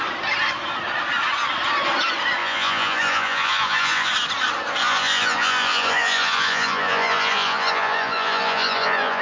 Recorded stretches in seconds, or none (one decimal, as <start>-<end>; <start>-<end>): 0.0-2.4; 4.1-4.8